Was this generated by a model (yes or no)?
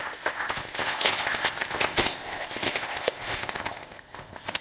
yes